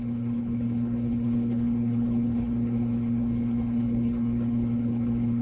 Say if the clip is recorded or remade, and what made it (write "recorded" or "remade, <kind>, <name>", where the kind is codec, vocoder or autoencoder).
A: remade, codec, HILCodec